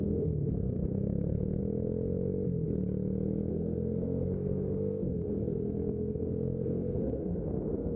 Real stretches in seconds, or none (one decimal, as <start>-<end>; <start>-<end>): 1.6-3.5